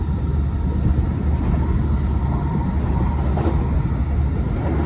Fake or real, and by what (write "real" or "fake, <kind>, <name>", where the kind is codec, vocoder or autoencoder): real